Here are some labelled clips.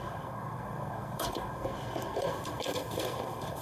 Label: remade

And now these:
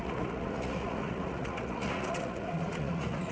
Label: remade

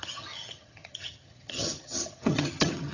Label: remade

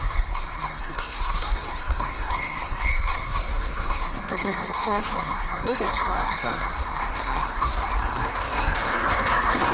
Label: remade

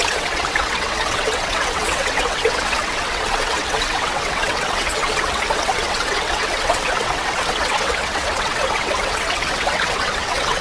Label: remade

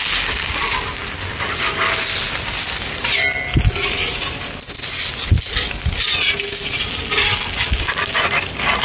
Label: recorded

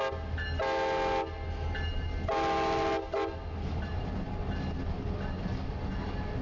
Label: recorded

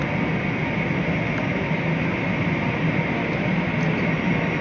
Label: recorded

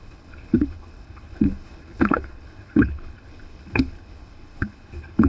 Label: remade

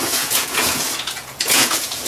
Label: remade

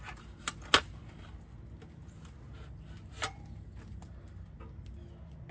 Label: recorded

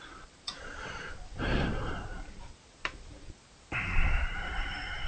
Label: remade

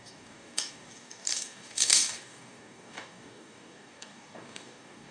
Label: remade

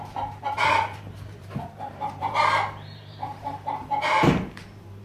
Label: remade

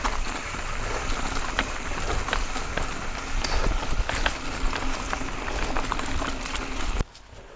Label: recorded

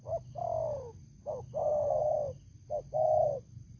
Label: recorded